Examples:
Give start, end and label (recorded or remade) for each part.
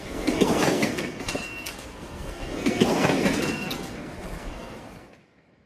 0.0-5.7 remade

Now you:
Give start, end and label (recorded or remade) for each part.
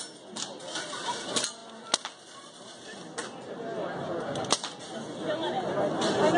0.0-6.4 recorded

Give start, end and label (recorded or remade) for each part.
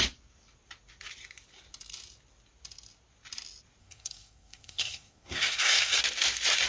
0.0-3.8 recorded; 3.8-6.0 remade; 6.0-6.7 recorded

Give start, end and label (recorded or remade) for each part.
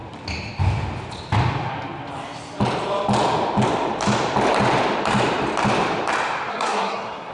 0.0-6.5 recorded; 6.5-7.3 remade